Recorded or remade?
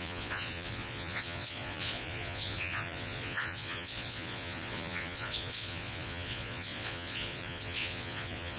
remade